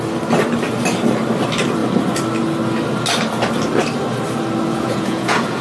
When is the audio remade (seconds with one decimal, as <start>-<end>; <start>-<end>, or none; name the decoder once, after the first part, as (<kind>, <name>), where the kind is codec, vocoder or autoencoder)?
4.7-5.6 (vocoder, Vocos)